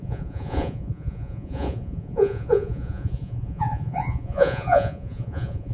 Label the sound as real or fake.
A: fake